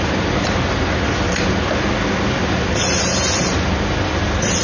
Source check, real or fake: real